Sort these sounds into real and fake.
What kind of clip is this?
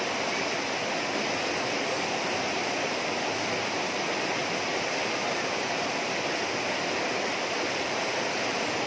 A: real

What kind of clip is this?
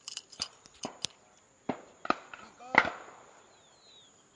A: real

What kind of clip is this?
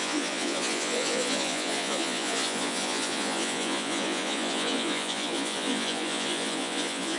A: fake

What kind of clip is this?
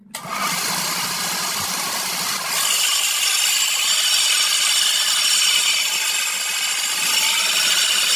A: real